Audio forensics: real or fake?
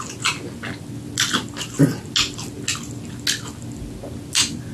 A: real